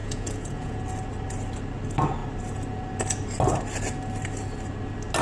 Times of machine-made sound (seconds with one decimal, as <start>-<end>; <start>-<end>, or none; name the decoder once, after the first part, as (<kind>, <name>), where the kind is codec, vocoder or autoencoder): 0.0-0.8 (vocoder, Vocos)